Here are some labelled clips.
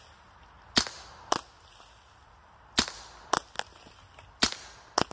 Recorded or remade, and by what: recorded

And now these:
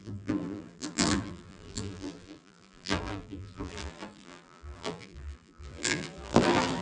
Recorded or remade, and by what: remade, vocoder, BigVGAN v2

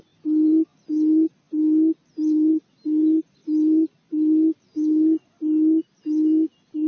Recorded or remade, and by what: recorded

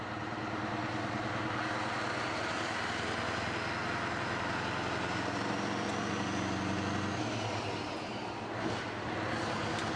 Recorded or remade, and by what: recorded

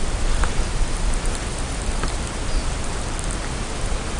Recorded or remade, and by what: recorded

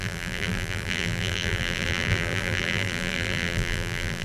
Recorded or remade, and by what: remade, vocoder, BigVGAN v2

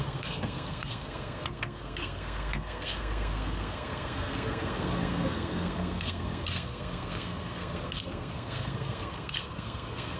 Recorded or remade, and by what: remade, codec, SNAC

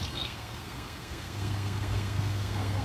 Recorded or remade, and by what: remade, codec, SNAC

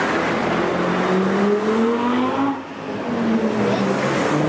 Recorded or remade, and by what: recorded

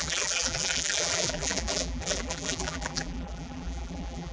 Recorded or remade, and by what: remade, vocoder, BigVGAN v2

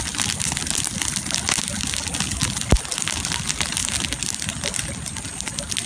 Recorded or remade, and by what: recorded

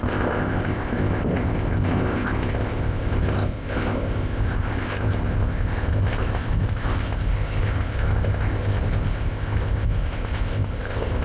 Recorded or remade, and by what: remade, codec, ZipCodec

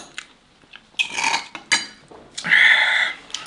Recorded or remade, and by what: recorded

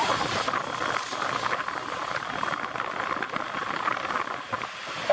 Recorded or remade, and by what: recorded